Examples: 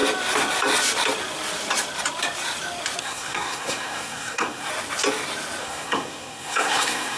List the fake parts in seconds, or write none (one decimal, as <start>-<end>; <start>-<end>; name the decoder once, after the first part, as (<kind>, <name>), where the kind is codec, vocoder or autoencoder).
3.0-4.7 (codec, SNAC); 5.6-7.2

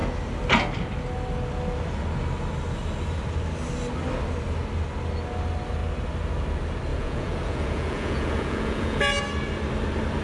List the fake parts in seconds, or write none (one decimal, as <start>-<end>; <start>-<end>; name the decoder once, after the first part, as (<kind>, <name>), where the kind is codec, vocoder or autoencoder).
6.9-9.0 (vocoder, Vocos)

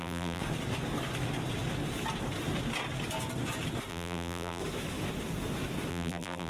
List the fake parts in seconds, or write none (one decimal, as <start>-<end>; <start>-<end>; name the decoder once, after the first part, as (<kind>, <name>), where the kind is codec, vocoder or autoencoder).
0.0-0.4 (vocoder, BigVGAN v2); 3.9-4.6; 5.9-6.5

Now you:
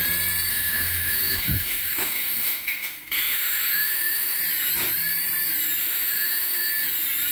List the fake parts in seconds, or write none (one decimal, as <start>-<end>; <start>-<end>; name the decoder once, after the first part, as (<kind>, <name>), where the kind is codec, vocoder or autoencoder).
0.5-4.4 (autoencoder, DAC-VAE); 5.8-6.7